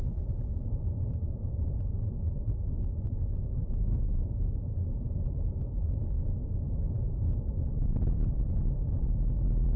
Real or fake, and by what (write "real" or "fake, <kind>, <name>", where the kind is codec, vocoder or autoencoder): real